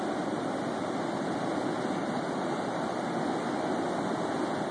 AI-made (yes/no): no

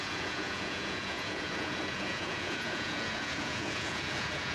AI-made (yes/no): yes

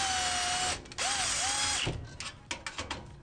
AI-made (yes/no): no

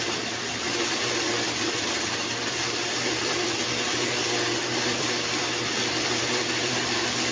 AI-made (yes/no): yes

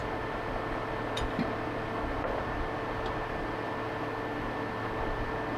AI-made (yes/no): no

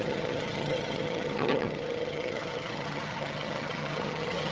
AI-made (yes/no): yes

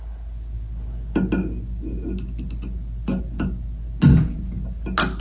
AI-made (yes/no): no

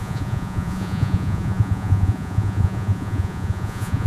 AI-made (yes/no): yes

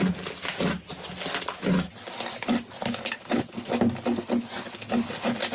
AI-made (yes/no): no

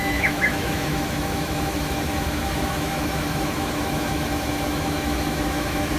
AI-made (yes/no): yes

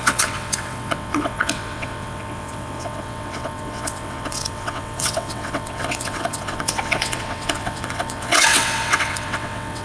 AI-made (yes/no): yes